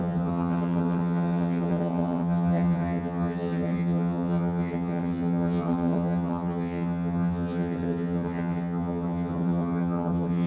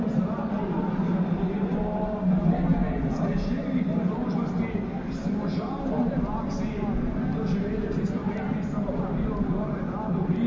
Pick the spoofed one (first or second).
first